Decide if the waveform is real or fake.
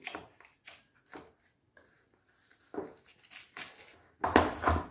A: real